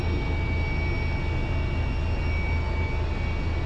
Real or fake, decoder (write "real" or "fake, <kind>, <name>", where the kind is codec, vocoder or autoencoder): real